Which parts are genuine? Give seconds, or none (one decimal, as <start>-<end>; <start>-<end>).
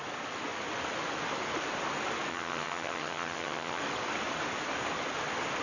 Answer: 0.0-2.3; 3.8-5.6